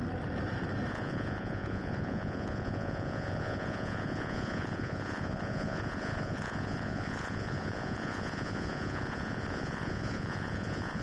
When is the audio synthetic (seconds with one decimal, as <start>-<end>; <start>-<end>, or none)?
0.9-11.0

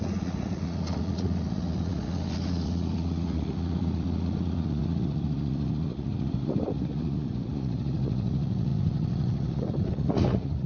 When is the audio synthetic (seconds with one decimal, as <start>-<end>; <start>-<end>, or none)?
0.0-10.7

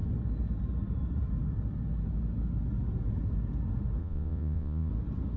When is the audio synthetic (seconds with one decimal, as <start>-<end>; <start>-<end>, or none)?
4.0-4.9

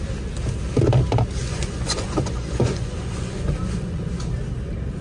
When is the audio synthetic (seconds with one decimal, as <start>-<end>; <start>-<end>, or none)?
1.4-4.1

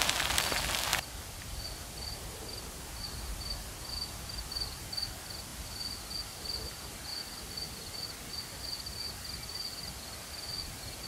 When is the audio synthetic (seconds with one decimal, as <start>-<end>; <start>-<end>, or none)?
none